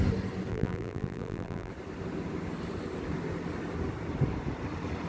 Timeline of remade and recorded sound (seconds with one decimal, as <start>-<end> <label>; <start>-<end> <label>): 0.0-0.5 recorded; 0.5-1.7 remade; 1.7-5.1 recorded